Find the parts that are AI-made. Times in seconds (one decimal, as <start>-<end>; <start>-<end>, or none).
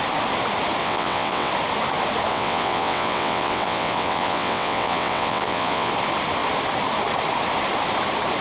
0.8-1.5; 2.3-5.9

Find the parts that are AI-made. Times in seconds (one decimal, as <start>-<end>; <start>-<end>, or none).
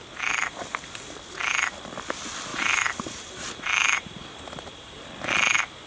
2.5-5.1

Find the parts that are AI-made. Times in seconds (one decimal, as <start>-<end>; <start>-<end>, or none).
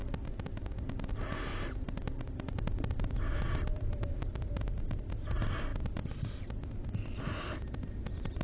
none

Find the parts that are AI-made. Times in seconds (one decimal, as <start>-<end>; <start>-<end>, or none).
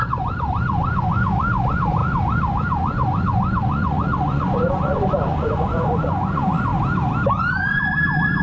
0.0-6.7; 7.5-8.4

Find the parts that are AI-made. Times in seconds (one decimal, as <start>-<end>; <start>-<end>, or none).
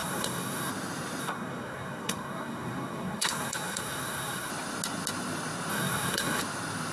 0.0-0.7; 1.2-4.5; 5.7-6.4